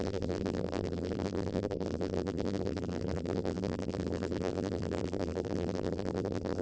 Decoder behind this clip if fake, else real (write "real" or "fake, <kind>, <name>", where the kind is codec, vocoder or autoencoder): fake, vocoder, BigVGAN v2